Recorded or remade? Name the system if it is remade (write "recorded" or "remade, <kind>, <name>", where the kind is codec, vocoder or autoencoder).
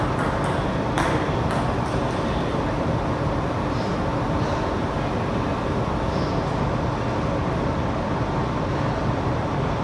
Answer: recorded